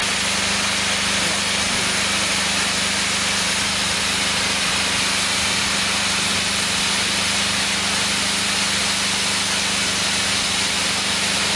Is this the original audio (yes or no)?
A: yes